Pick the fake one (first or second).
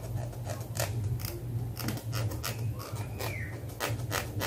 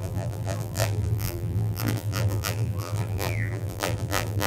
second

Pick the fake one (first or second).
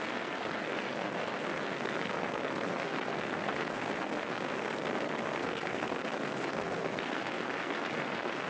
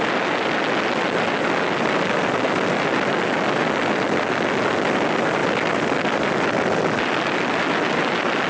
first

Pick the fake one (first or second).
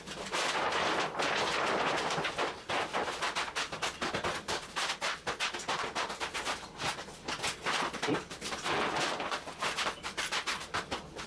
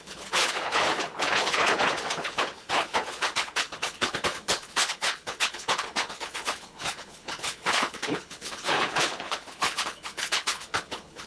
second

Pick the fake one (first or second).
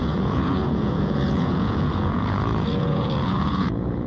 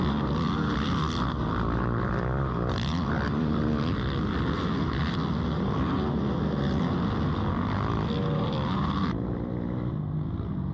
first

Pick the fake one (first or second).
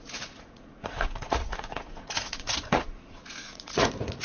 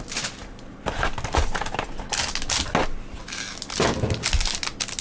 first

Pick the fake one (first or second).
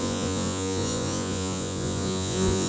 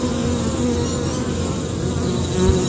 first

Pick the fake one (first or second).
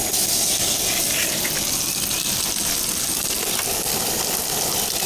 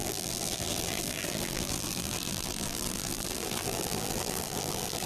second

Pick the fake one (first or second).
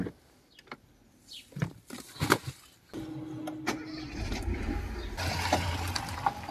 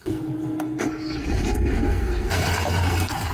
second